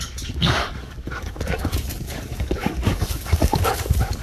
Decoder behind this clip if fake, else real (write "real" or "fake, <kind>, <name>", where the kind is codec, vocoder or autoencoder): fake, codec, DAC